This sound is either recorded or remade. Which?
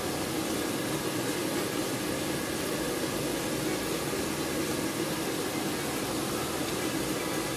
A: recorded